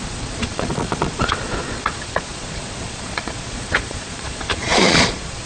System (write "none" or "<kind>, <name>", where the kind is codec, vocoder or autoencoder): vocoder, Vocos